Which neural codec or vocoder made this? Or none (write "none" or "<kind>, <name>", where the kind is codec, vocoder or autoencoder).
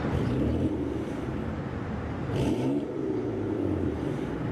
vocoder, BigVGAN v2